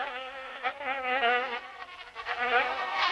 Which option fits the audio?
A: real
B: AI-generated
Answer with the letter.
B